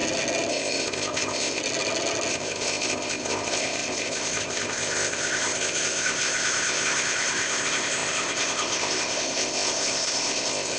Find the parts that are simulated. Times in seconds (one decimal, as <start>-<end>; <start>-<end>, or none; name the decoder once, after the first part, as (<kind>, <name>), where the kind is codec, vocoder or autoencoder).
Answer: 0.5-1.6 (codec, ZipCodec); 2.3-10.8